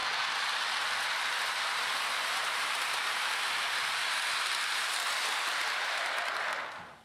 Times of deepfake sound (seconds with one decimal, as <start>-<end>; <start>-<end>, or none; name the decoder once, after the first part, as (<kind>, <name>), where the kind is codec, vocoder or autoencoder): 2.4-3.2 (vocoder, BigVGAN v2)